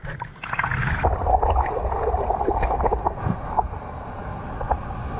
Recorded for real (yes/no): yes